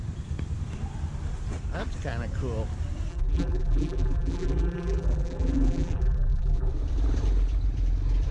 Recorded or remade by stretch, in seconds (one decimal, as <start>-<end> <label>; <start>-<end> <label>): 0.0-3.1 recorded; 3.1-6.7 remade; 6.7-8.3 recorded